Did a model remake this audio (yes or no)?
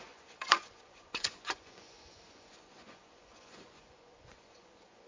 yes